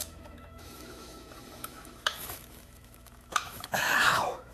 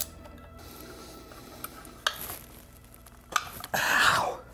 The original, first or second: second